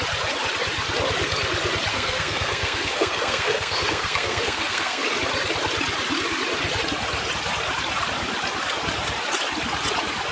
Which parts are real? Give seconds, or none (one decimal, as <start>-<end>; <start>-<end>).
0.0-1.9; 5.0-10.3